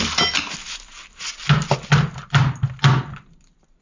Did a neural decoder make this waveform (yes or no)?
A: no